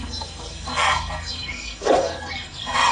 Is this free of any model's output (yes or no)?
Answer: no